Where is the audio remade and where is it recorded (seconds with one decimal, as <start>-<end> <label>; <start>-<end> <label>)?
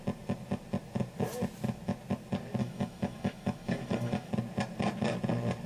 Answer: 0.0-2.6 recorded; 2.6-4.3 remade; 4.3-5.7 recorded